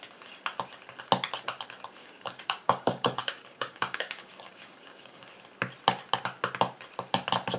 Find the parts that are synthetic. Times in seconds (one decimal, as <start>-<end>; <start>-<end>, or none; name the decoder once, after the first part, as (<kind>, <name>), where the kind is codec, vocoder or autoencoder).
2.0-5.3 (codec, DAC)